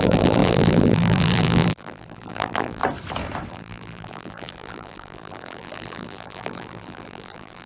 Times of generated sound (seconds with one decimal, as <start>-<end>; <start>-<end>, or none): 0.0-2.8; 3.5-7.7